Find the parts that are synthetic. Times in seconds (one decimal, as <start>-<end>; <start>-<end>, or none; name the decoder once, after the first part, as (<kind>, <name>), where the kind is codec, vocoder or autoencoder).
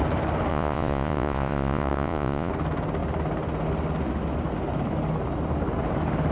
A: 0.5-2.5 (vocoder, Vocos)